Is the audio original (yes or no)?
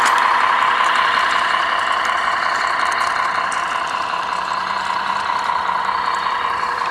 no